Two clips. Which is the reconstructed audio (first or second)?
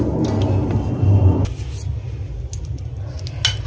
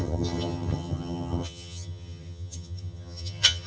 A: second